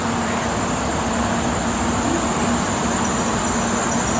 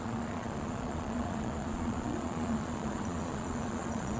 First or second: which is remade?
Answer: second